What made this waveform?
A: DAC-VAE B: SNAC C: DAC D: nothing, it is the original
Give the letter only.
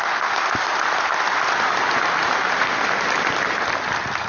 D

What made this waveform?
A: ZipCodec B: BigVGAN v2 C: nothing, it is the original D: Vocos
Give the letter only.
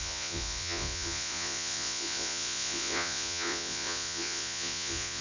D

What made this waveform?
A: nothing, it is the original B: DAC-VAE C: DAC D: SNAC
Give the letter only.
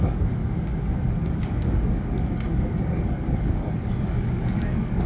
C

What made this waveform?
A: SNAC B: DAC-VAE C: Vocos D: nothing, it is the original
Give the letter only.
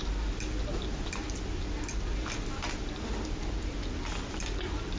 D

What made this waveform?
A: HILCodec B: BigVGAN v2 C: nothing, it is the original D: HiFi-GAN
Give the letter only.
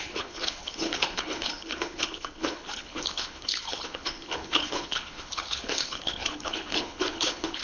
A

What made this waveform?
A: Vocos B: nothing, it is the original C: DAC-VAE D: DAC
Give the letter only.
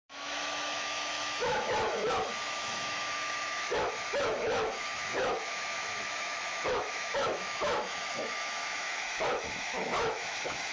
C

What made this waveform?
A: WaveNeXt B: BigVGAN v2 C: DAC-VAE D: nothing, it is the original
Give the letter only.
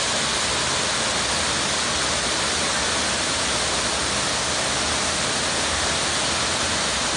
D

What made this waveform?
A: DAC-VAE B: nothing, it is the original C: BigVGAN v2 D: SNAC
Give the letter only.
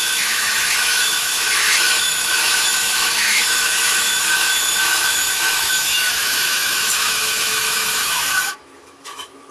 A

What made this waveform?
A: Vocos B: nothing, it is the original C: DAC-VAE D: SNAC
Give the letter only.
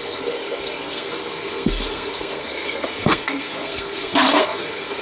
D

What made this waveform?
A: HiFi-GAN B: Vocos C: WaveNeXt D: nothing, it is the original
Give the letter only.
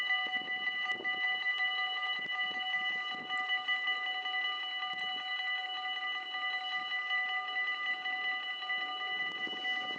D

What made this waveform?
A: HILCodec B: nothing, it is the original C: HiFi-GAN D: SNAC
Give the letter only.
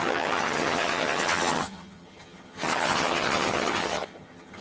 C